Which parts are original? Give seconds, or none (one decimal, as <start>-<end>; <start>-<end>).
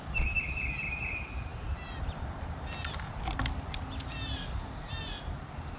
0.0-5.8